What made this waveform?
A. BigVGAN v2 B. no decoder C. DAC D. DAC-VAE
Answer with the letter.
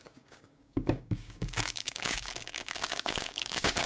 C